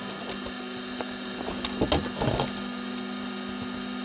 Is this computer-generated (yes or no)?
no